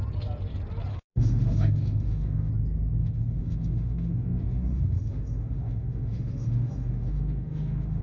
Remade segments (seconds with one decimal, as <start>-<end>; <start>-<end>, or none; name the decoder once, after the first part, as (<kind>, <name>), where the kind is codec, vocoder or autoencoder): 0.9-2.5 (autoencoder, DAC-VAE); 3.0-8.0